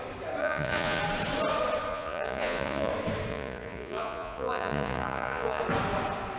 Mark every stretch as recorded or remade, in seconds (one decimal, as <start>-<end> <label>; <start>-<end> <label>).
0.0-0.4 recorded; 0.4-1.0 remade; 1.0-1.9 recorded; 1.9-2.9 remade; 2.9-3.3 recorded; 3.3-5.6 remade; 5.6-6.4 recorded